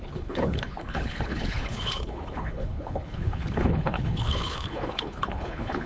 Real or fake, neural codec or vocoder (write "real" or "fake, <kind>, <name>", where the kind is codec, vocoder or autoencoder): fake, codec, HILCodec